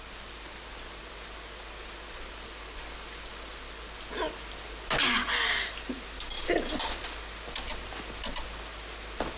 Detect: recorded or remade recorded